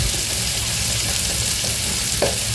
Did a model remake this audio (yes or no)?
no